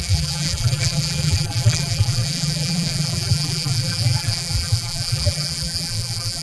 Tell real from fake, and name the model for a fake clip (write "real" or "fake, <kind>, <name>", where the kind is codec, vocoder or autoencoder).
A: fake, vocoder, BigVGAN v2